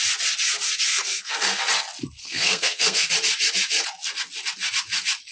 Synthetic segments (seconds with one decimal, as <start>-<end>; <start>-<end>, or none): 0.9-1.6; 2.2-3.1